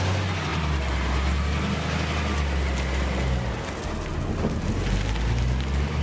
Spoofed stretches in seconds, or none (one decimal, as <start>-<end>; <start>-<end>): none